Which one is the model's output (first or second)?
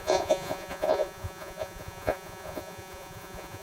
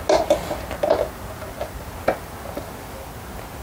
first